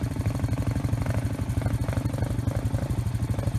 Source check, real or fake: real